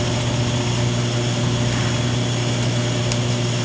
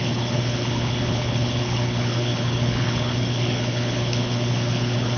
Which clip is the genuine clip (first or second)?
first